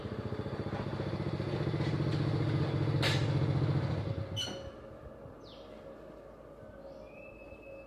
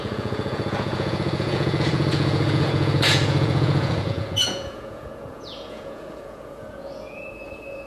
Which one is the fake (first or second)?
second